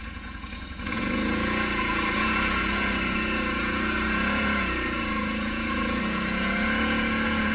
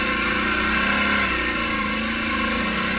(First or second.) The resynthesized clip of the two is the first